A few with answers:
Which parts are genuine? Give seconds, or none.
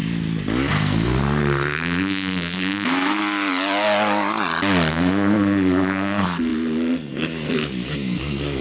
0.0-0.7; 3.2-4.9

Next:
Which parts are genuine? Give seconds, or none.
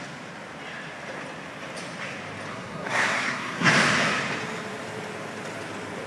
0.0-2.5; 3.7-6.1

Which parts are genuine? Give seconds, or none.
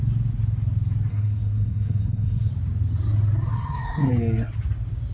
0.0-1.1; 2.5-3.5; 4.1-5.1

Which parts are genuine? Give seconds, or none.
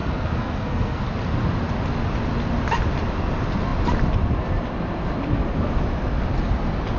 1.0-7.0